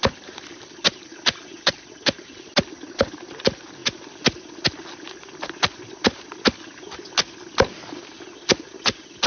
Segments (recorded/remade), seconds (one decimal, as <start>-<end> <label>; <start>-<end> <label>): 0.0-9.3 recorded

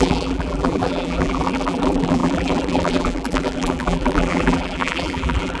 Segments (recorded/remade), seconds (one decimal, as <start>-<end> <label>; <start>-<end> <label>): 0.0-5.6 remade

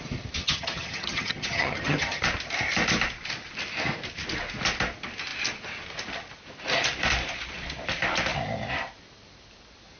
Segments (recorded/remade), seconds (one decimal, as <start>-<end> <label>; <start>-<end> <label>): 0.0-0.4 recorded; 0.4-2.2 remade; 2.2-10.0 recorded

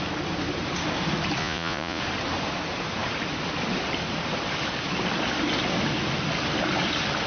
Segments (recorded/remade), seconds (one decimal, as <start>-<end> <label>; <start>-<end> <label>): 0.0-1.4 recorded; 1.4-2.0 remade; 2.0-7.3 recorded

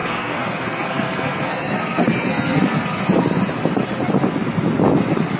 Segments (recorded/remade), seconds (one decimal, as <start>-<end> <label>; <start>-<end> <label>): 0.0-3.1 remade; 3.1-5.4 recorded

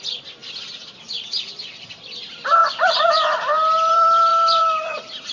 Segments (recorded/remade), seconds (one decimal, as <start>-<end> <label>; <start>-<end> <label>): 0.0-0.4 remade; 0.4-1.4 recorded; 1.4-2.6 remade; 2.6-3.9 recorded; 3.9-5.3 remade